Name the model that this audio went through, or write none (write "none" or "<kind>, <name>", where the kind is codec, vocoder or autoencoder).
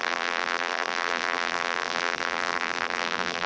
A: vocoder, BigVGAN v2